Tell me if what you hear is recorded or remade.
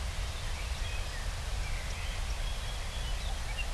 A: recorded